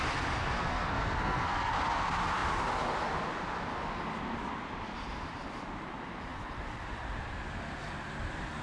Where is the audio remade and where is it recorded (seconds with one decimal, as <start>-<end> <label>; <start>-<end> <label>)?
0.0-0.4 recorded; 0.4-1.7 remade; 1.7-8.6 recorded